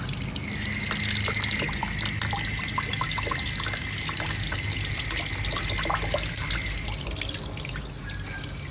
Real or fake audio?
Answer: real